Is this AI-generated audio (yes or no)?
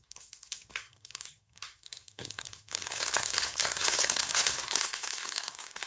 yes